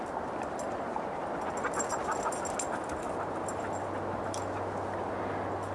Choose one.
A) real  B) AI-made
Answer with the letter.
A